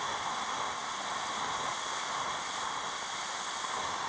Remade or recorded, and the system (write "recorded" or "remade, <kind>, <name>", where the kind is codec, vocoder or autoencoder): recorded